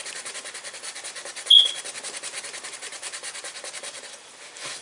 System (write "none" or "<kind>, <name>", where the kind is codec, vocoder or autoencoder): vocoder, BigVGAN v2